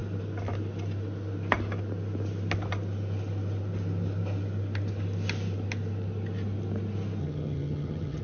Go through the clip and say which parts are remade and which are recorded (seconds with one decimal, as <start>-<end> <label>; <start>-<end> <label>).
0.0-7.2 recorded; 7.2-8.2 remade